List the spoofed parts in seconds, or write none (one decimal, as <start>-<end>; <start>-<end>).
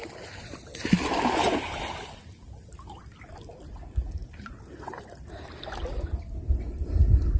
4.2-5.6